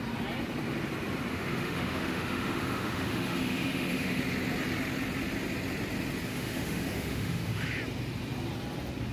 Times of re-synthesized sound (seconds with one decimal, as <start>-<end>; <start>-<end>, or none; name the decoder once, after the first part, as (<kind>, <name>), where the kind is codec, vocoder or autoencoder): 1.3-4.2 (autoencoder, DAC-VAE); 6.3-7.8